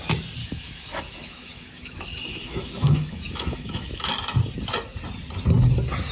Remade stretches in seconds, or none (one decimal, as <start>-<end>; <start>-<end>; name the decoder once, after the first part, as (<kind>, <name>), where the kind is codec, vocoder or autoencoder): 0.4-4.1 (autoencoder, DAC-VAE)